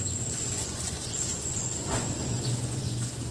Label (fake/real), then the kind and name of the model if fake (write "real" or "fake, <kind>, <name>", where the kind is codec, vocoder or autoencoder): fake, vocoder, Vocos